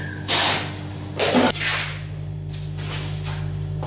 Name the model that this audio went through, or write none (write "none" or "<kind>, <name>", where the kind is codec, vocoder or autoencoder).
none